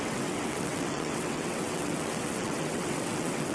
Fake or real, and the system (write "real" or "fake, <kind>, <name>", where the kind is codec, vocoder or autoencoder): fake, vocoder, WaveNeXt